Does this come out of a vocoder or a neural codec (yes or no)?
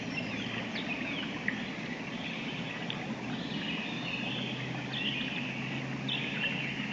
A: no